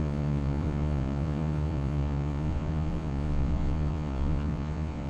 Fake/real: fake